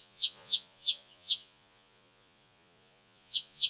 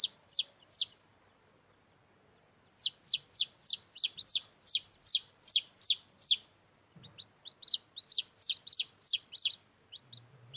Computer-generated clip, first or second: first